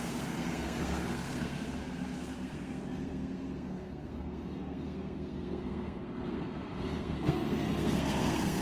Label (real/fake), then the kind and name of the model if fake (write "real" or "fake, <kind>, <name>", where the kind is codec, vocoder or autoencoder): fake, codec, SNAC